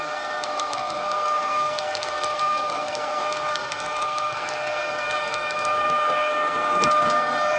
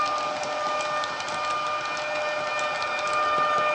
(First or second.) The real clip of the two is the second